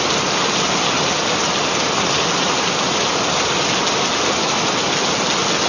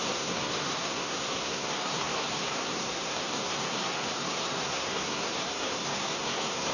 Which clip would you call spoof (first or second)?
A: second